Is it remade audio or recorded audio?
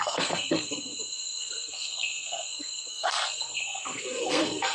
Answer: remade